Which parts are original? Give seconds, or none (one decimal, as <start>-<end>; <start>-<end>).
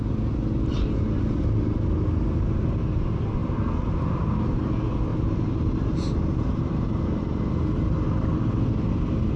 0.0-5.1; 7.2-9.4